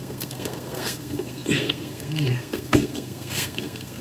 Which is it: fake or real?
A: fake